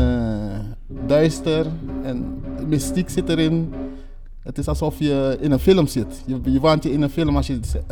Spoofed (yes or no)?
no